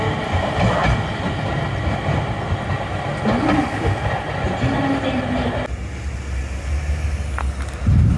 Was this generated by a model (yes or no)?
no